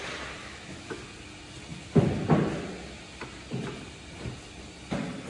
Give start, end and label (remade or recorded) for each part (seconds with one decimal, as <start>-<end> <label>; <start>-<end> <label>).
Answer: 0.0-0.4 recorded; 0.4-1.0 remade; 1.0-5.3 recorded